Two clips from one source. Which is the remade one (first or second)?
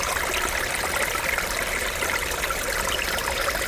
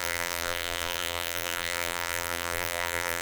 second